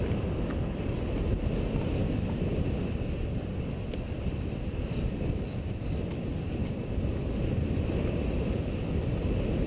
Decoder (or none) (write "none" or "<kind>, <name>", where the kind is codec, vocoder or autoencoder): none